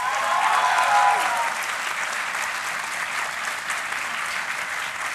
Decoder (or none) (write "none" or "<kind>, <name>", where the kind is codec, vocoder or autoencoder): none